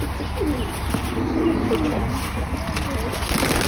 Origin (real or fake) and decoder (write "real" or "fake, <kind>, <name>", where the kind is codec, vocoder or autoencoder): real